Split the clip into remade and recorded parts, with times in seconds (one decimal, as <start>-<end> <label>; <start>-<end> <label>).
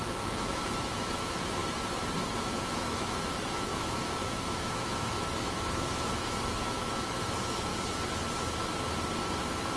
0.0-1.6 remade; 1.6-2.3 recorded; 2.3-7.7 remade; 7.7-9.4 recorded; 9.4-9.8 remade